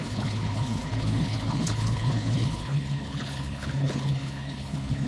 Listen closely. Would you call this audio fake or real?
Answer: fake